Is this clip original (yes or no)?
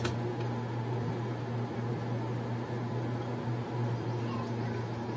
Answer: yes